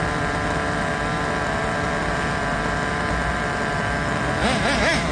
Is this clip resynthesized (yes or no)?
no